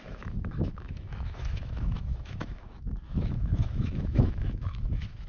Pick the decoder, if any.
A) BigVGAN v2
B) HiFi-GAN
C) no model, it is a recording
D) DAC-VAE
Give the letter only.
D